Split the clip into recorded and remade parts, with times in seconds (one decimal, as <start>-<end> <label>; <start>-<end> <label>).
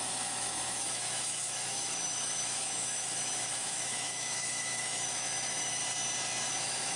0.0-5.8 remade; 5.8-6.5 recorded; 6.5-7.0 remade